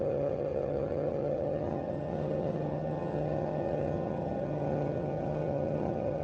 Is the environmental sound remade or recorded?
remade